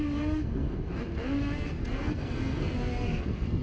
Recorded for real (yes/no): no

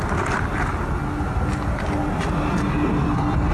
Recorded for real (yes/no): yes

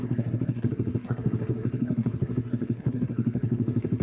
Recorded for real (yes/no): no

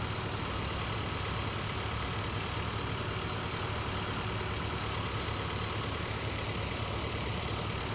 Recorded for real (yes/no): yes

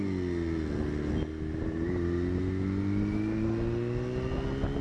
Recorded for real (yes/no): yes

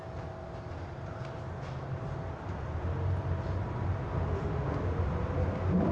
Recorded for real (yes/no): yes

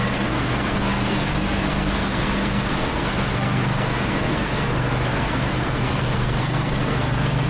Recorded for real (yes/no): no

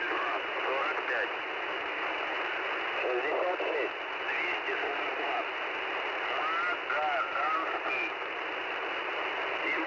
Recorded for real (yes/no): yes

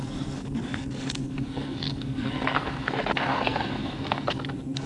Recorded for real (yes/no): no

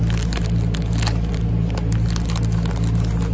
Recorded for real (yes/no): yes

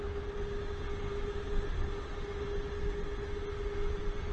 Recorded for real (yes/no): yes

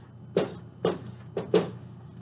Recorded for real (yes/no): yes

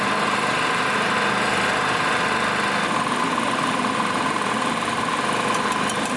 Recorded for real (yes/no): yes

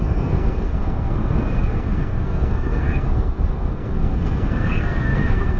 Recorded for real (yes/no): no